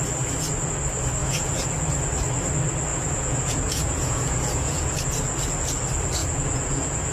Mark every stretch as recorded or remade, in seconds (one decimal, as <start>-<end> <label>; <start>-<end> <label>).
0.0-1.2 recorded; 1.2-1.7 remade; 1.7-2.9 recorded; 2.9-5.0 remade; 5.0-6.2 recorded; 6.2-7.1 remade